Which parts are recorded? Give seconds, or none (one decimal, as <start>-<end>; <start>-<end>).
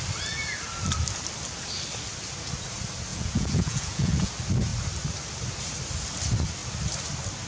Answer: 0.0-3.1; 4.3-7.5